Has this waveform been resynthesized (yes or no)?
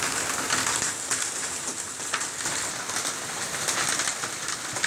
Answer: no